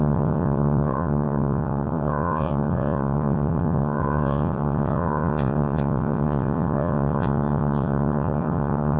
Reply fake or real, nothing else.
fake